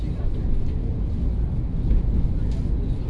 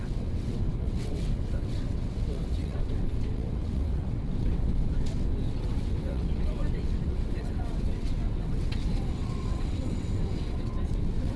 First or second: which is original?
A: first